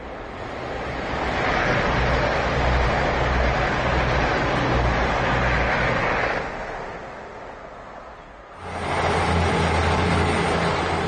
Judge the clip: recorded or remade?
recorded